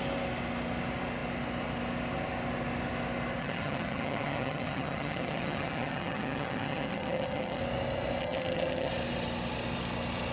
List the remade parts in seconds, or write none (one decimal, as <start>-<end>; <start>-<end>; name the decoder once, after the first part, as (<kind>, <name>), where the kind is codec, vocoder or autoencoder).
3.4-7.6 (vocoder, HiFi-GAN); 8.2-8.9